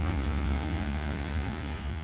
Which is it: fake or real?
fake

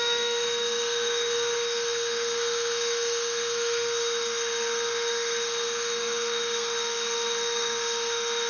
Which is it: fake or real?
fake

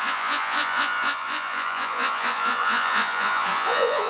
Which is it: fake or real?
fake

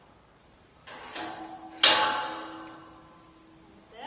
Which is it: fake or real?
real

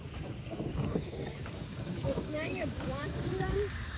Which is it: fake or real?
fake